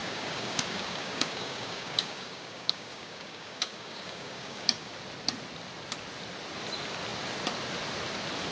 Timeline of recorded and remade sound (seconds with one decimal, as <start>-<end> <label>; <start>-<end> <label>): 0.0-4.9 remade; 4.9-8.5 recorded